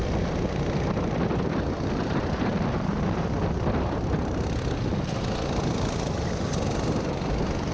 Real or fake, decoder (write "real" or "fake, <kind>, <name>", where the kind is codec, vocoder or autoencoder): real